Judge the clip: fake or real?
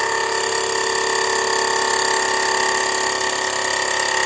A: real